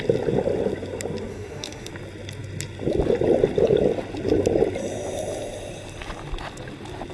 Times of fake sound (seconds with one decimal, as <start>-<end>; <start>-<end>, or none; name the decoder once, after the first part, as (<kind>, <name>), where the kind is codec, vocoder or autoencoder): 1.3-1.9 (autoencoder, DAC-VAE)